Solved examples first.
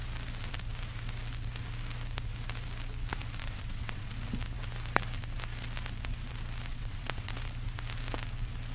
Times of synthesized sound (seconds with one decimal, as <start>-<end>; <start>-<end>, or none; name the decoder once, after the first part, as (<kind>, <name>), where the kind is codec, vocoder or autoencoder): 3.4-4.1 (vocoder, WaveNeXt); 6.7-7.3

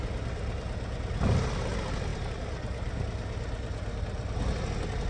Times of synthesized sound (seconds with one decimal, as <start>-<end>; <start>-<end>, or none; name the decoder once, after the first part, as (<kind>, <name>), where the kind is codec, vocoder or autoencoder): none

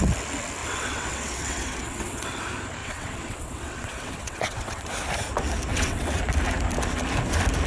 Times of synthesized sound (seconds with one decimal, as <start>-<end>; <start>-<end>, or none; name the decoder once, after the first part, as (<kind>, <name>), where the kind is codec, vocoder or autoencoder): 0.6-2.4 (vocoder, WaveNeXt); 2.8-4.8; 5.7-6.2

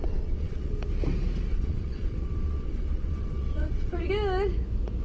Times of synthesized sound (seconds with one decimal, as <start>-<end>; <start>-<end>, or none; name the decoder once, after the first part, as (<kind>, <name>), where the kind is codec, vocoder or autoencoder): 0.0-0.7 (vocoder, WaveNeXt); 1.5-4.1